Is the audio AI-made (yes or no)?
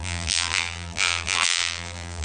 yes